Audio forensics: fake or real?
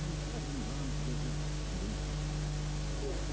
real